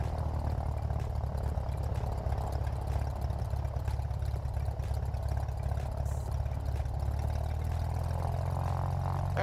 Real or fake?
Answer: real